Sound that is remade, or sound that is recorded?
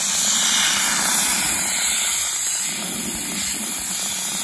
recorded